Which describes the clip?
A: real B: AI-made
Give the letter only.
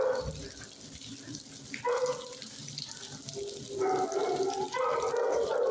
A